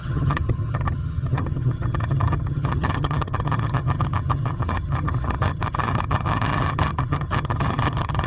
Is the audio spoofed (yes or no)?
yes